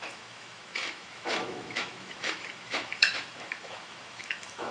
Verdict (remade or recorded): remade